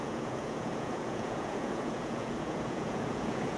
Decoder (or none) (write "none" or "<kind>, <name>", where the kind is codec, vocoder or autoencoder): vocoder, Vocos